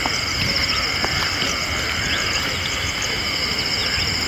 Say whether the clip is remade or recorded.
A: recorded